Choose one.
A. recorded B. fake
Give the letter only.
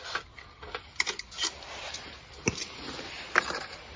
A